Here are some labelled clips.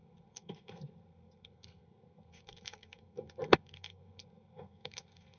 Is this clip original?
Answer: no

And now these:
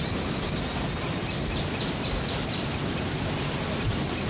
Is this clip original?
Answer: yes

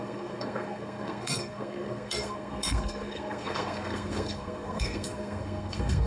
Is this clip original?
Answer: no